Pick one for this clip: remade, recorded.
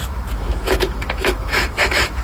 remade